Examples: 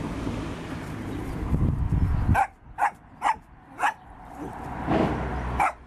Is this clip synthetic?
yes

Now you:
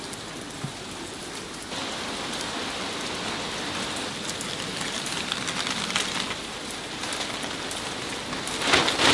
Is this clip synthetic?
no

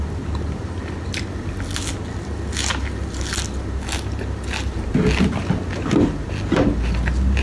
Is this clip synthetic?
no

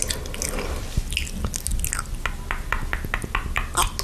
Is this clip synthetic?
no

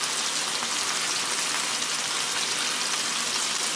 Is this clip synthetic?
no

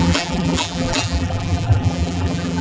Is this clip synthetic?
yes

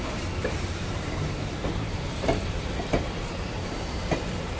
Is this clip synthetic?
yes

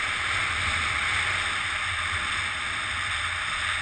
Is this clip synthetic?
no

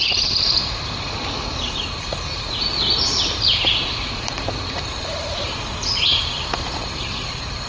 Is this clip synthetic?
yes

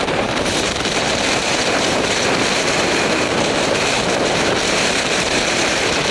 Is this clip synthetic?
yes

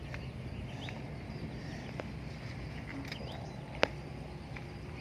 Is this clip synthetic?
no